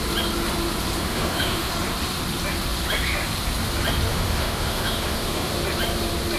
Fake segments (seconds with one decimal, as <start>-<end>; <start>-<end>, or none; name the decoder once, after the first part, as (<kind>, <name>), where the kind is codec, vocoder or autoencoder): 1.0-1.7 (autoencoder, DAC-VAE); 4.1-5.5